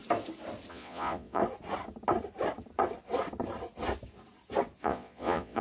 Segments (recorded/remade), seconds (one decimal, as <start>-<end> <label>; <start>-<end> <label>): 0.0-0.7 recorded; 0.7-1.4 remade; 1.4-4.8 recorded; 4.8-5.6 remade